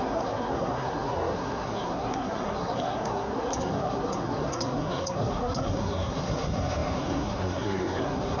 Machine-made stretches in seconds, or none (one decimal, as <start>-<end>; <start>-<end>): 0.0-8.4